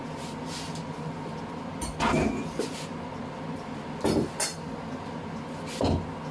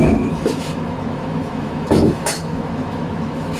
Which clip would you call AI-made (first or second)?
second